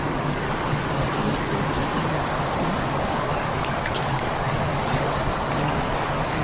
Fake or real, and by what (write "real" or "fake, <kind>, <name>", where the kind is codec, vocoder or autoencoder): fake, codec, DAC